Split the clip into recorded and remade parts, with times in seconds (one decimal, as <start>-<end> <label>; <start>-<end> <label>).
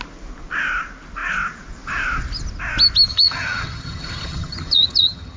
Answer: 0.0-3.1 recorded; 3.1-5.4 remade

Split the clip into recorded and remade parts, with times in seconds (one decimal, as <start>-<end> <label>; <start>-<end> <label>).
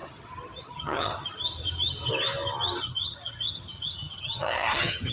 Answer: 0.0-0.7 recorded; 0.7-1.1 remade; 1.1-2.8 recorded; 2.8-5.1 remade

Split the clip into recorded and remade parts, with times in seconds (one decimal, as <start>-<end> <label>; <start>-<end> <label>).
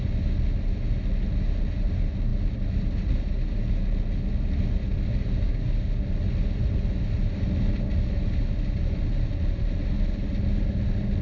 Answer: 0.0-11.2 recorded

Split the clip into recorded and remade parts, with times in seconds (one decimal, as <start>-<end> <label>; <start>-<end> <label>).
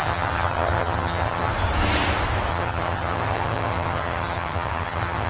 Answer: 0.0-1.5 remade; 1.5-2.5 recorded; 2.5-5.3 remade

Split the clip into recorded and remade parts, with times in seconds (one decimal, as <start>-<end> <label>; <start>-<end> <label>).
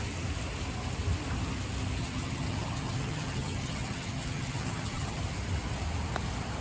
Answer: 0.0-2.0 recorded; 2.0-5.2 remade; 5.2-6.6 recorded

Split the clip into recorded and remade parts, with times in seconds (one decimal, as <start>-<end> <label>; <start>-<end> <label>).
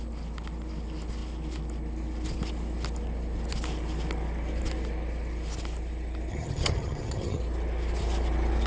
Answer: 0.0-6.3 recorded; 6.3-7.4 remade; 7.4-8.7 recorded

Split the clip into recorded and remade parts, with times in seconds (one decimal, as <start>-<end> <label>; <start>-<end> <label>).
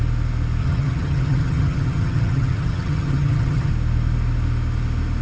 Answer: 0.0-0.6 recorded; 0.6-3.7 remade; 3.7-5.2 recorded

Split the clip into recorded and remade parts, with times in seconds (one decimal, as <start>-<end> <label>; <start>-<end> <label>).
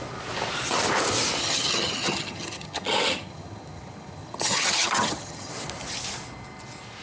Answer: 0.0-1.4 recorded; 1.4-5.5 remade; 5.5-7.0 recorded